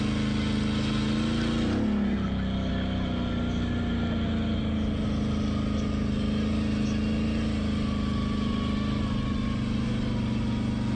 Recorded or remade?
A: recorded